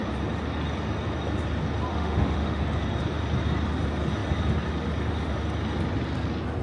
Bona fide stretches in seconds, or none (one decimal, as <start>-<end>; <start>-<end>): 0.0-1.9; 2.6-6.6